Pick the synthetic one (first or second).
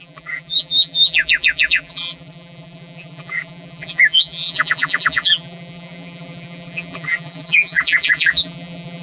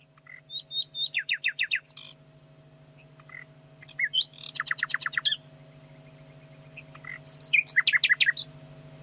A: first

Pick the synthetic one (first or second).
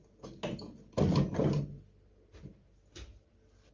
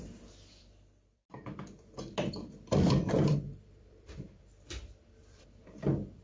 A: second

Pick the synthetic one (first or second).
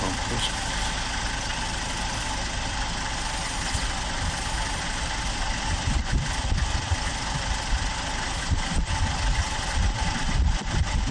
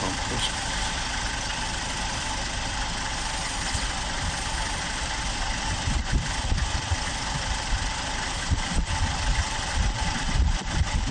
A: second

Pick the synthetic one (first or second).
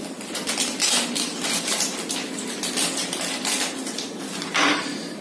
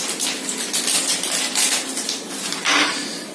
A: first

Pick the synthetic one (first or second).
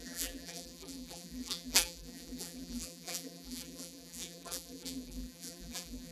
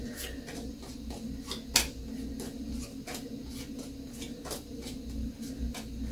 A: first